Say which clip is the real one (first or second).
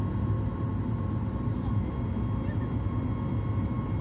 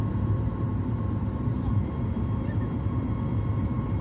first